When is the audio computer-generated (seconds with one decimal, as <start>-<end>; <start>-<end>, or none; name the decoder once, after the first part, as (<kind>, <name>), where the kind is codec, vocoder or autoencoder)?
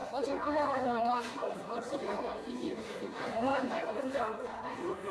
0.0-5.1 (codec, SNAC)